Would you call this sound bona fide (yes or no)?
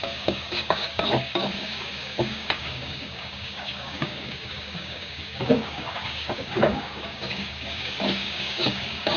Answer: no